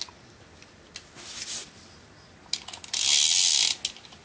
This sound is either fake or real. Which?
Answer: real